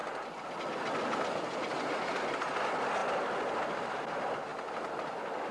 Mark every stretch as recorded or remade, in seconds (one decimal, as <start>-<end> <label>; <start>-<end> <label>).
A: 0.0-5.5 recorded